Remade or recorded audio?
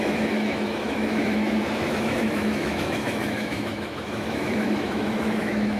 remade